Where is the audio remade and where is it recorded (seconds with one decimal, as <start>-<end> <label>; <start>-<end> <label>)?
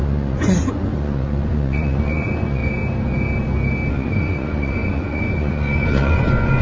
0.0-2.6 remade; 2.6-3.9 recorded; 3.9-6.6 remade